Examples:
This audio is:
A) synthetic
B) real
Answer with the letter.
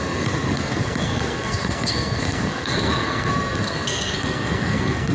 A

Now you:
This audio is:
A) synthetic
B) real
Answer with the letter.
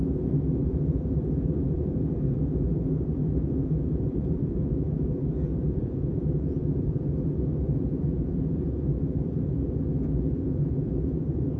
A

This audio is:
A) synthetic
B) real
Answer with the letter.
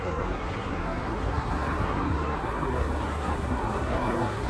A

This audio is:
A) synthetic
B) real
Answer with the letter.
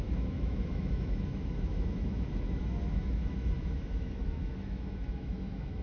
A